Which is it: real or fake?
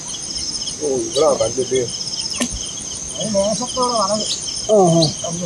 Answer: real